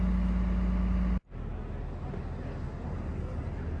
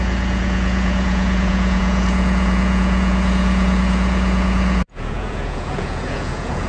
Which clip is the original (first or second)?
first